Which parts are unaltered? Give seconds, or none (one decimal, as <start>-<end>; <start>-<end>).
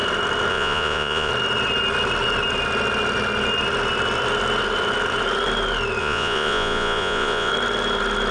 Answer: 0.0-0.5; 1.3-6.0; 7.5-8.3